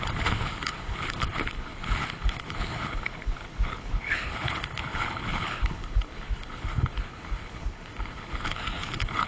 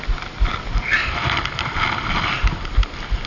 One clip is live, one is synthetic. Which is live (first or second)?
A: second